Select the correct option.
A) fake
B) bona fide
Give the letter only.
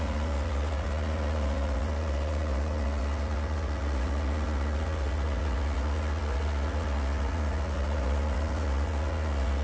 A